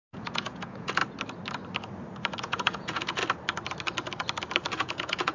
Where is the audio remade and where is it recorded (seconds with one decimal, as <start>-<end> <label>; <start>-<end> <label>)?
0.0-1.0 remade; 1.0-2.4 recorded; 2.4-3.2 remade; 3.2-4.7 recorded; 4.7-5.3 remade

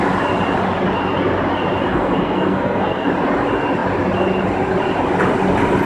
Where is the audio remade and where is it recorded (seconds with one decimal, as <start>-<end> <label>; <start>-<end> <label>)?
0.0-1.9 recorded; 1.9-3.1 remade; 3.1-5.9 recorded